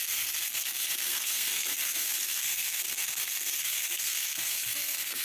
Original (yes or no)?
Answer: no